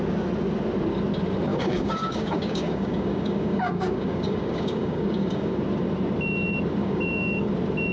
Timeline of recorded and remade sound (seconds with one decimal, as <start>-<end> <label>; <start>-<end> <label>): 0.0-1.5 recorded; 1.5-5.6 remade; 5.6-6.8 recorded; 6.8-7.5 remade; 7.5-7.9 recorded